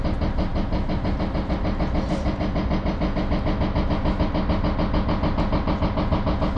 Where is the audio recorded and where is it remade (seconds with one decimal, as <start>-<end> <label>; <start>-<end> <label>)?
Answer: 0.0-6.6 recorded